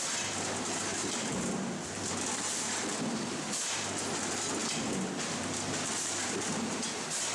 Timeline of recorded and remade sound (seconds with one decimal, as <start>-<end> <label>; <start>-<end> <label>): 0.0-0.9 recorded; 0.9-3.4 remade; 3.4-7.3 recorded